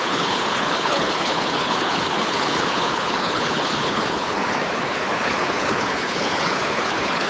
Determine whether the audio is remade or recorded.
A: remade